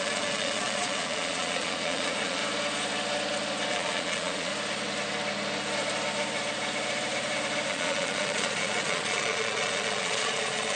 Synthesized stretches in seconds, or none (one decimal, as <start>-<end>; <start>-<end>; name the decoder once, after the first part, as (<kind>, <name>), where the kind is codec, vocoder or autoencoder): 0.0-2.4 (vocoder, Vocos); 3.7-4.5; 7.7-10.8